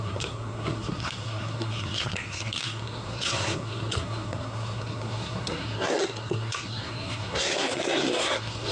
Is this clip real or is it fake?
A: fake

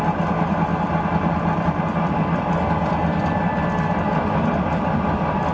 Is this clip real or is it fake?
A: real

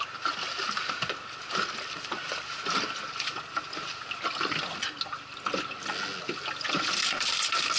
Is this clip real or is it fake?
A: real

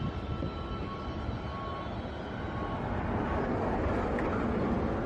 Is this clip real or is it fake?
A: real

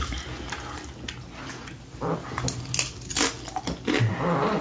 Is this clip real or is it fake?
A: real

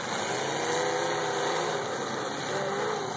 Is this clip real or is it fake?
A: real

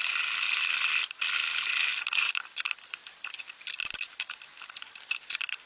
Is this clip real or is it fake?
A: real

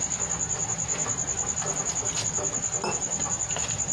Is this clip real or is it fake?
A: real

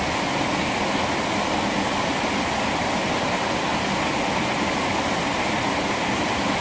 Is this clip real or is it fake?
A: real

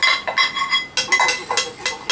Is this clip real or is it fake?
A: real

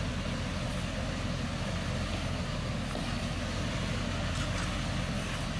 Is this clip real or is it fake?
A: real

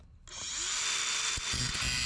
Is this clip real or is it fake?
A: real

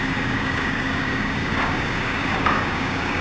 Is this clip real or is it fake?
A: fake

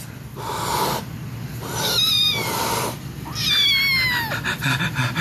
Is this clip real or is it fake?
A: real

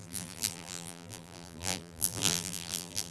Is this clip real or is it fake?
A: fake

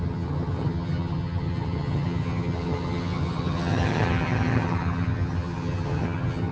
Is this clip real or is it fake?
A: fake